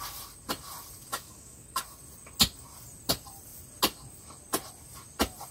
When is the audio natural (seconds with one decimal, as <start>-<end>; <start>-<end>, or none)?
0.0-1.1; 1.8-5.5